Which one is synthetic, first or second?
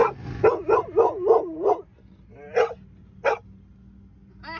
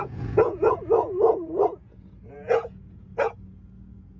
second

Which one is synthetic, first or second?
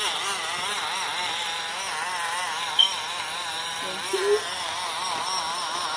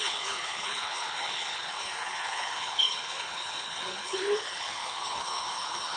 second